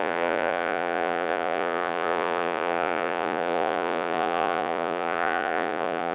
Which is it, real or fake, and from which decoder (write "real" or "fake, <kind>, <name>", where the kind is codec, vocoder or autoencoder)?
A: fake, vocoder, Vocos